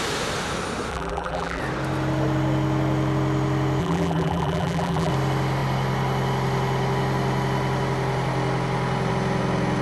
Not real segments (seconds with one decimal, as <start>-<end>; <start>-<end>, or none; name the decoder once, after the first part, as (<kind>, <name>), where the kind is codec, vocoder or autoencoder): 0.9-1.6 (vocoder, BigVGAN v2); 3.8-5.1